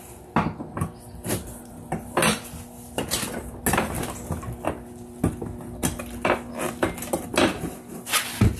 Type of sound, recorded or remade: recorded